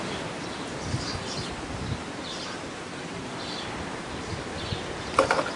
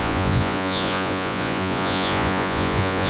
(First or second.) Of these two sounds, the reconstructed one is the second